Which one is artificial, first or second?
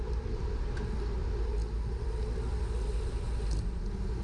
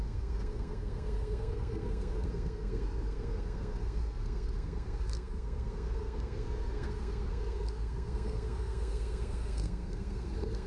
second